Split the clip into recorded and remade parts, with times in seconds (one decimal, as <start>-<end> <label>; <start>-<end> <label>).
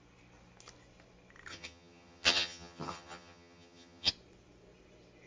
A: 0.0-1.5 recorded; 1.5-4.1 remade; 4.1-5.3 recorded